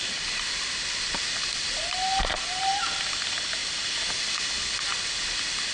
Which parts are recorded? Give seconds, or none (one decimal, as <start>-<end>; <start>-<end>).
0.0-5.7